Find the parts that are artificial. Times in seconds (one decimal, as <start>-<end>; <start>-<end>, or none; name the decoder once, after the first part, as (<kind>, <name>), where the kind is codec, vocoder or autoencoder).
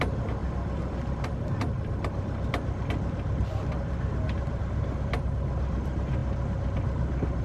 0.0-0.4 (vocoder, BigVGAN v2); 4.6-6.2